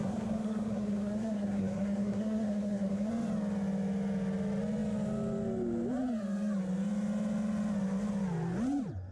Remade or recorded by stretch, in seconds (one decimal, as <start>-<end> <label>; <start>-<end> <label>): 0.0-3.1 remade; 3.1-9.1 recorded